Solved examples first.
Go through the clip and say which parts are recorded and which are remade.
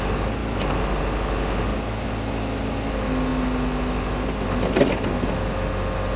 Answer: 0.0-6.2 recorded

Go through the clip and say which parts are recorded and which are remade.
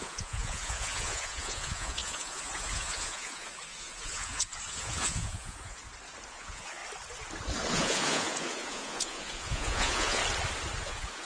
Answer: 0.0-5.8 remade; 5.8-6.3 recorded; 6.3-6.8 remade; 6.8-7.7 recorded; 7.7-10.2 remade; 10.2-10.8 recorded; 10.8-11.3 remade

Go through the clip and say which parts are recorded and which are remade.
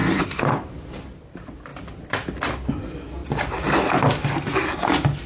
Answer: 0.0-5.3 recorded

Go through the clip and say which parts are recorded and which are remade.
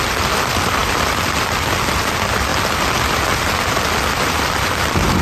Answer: 0.0-0.8 remade; 0.8-1.4 recorded; 1.4-2.5 remade; 2.5-3.7 recorded; 3.7-5.2 remade